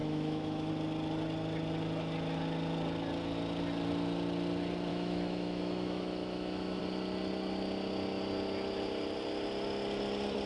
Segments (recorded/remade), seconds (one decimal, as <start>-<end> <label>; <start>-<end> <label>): 0.0-0.7 remade; 0.7-4.9 recorded; 4.9-6.8 remade; 6.8-10.5 recorded